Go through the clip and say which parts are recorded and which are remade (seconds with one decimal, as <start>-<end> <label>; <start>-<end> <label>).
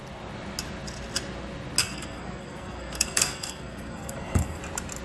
0.0-1.8 recorded; 1.8-4.6 remade; 4.6-5.0 recorded